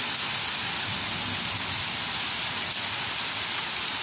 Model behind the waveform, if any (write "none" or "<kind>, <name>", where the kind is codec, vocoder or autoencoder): none